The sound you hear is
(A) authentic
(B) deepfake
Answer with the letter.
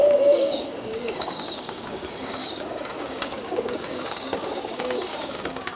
B